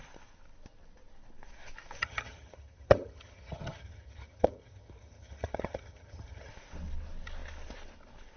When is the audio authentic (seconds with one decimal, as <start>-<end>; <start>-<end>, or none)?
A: 0.0-2.0; 6.5-8.4